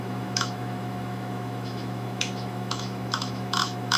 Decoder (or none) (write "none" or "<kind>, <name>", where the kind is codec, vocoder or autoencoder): autoencoder, DAC-VAE